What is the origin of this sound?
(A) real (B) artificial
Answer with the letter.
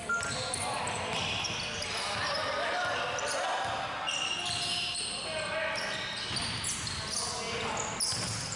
A